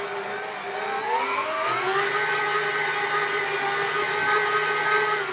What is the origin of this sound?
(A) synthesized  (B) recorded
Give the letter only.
B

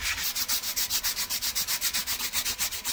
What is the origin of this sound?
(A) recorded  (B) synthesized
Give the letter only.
A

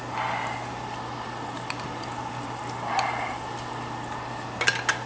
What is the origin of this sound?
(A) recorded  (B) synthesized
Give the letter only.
A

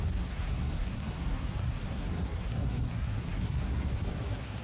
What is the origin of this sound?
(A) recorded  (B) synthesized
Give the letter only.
B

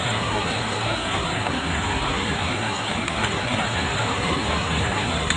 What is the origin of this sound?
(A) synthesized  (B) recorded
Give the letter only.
A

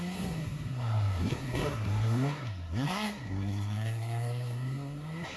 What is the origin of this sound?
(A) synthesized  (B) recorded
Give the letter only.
A